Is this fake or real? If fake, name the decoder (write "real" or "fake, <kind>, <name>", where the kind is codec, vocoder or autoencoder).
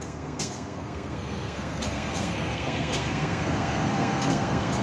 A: fake, codec, SNAC